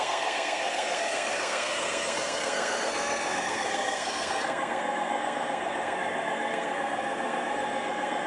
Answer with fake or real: fake